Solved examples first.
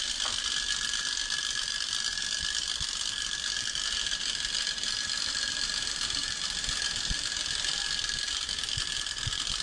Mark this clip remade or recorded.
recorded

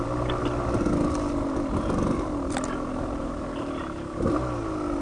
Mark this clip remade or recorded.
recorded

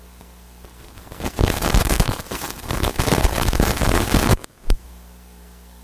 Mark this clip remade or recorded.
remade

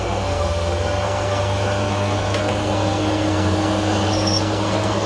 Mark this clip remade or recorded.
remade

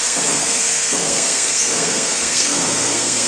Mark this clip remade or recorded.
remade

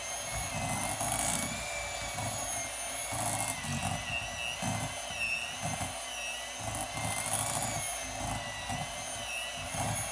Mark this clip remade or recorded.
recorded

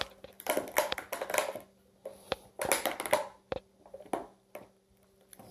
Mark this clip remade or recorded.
recorded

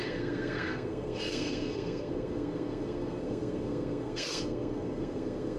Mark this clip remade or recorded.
remade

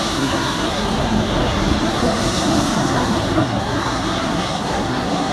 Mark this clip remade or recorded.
remade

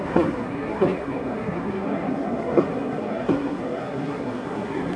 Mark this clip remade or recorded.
remade